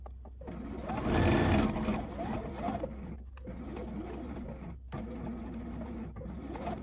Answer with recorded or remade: recorded